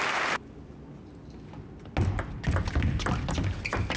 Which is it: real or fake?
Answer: real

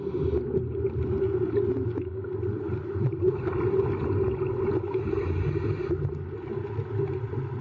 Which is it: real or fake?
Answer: real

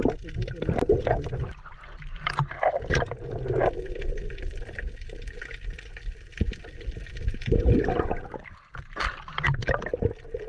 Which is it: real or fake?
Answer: real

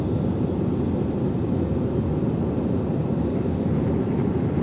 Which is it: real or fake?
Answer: real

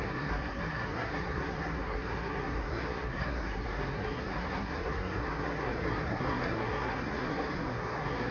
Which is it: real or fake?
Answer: fake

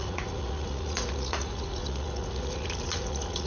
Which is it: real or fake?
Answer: fake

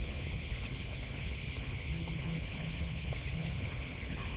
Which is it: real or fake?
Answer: fake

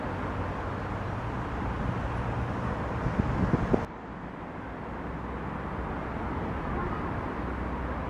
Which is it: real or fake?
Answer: real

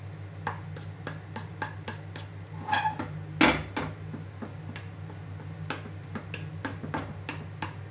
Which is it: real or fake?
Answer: real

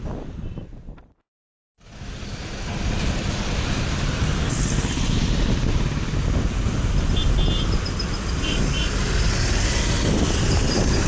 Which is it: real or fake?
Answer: real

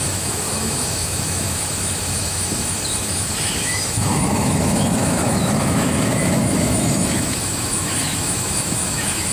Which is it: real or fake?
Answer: fake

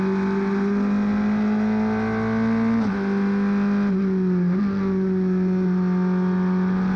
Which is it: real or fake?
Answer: real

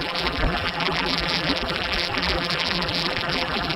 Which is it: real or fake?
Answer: fake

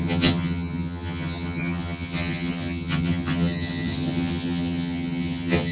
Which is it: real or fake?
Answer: fake